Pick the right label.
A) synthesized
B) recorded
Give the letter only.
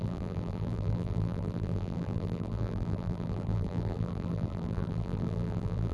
A